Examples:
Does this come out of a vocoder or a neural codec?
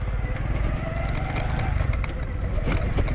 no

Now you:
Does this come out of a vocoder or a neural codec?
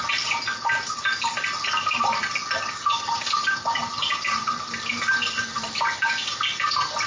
no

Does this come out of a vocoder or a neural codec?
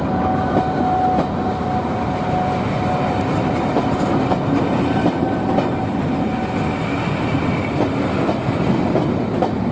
no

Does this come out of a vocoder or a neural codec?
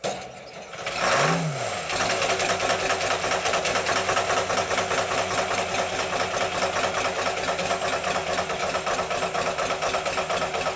no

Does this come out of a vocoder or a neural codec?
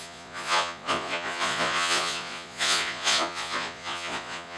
yes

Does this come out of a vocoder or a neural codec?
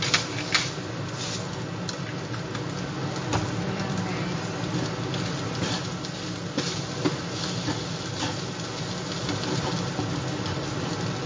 no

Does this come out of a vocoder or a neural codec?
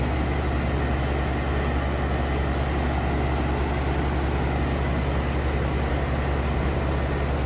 no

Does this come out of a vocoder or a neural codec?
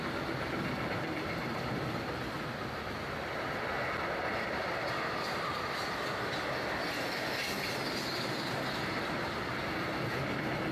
no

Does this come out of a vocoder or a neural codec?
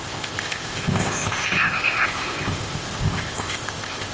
yes